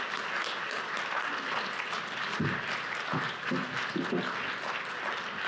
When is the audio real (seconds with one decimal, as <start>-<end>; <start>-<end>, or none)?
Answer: 0.0-5.5